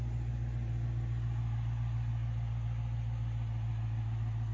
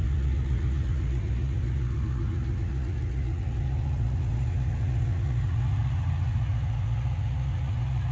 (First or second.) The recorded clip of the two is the first